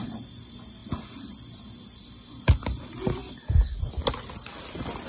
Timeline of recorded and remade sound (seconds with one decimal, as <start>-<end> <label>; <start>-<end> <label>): 0.0-5.1 recorded